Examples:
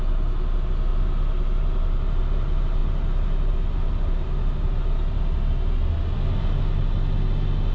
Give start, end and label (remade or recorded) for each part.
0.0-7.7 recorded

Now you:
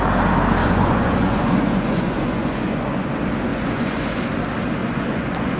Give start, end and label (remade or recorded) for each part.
0.0-0.6 recorded; 0.6-3.1 remade; 3.1-3.5 recorded; 3.5-4.2 remade; 4.2-4.8 recorded; 4.8-5.6 remade

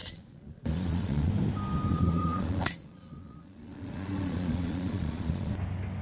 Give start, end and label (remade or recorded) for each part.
0.0-1.3 remade; 1.3-1.9 recorded; 1.9-5.5 remade; 5.5-6.0 recorded

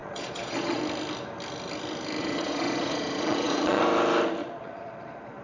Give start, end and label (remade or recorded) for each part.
0.0-0.8 remade; 0.8-2.2 recorded; 2.2-3.8 remade; 3.8-4.4 recorded; 4.4-5.4 remade

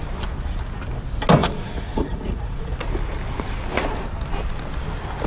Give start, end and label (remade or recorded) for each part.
0.0-1.4 recorded; 1.4-2.8 remade; 2.8-5.3 recorded

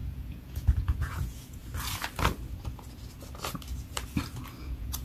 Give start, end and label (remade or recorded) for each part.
0.0-1.6 remade; 1.6-4.6 recorded; 4.6-5.0 remade